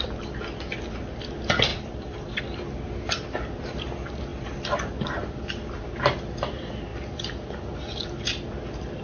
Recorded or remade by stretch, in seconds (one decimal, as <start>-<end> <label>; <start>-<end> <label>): 0.0-1.7 recorded; 1.7-2.4 remade; 2.4-4.3 recorded; 4.3-5.7 remade; 5.7-9.0 recorded